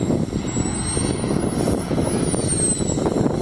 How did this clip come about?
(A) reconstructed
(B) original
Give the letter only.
B